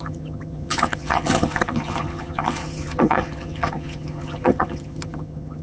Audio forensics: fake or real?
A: fake